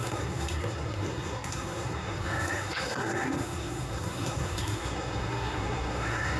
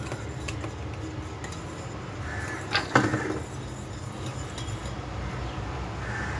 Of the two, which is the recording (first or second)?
second